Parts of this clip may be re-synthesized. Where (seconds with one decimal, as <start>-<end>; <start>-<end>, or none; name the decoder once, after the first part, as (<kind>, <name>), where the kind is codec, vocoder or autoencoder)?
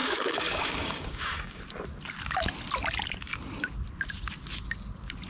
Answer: 0.0-1.6 (codec, DAC)